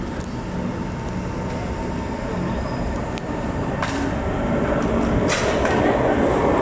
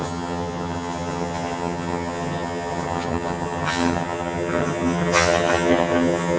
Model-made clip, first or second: second